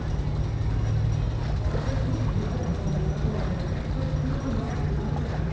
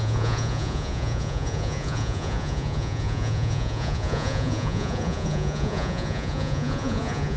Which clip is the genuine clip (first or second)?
first